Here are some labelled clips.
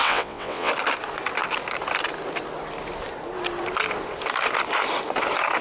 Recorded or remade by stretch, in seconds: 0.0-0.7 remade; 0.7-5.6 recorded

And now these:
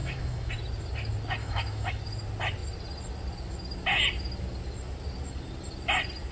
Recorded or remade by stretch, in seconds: 0.0-0.5 remade; 0.5-1.4 recorded; 1.4-2.0 remade; 2.0-6.3 recorded

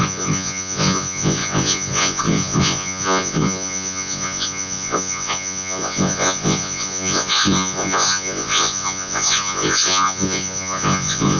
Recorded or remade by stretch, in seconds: 0.0-11.4 remade